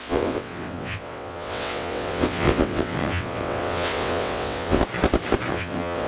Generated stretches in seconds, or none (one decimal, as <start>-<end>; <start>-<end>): 0.0-4.8; 5.5-6.1